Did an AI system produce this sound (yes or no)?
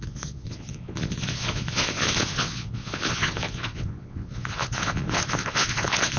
yes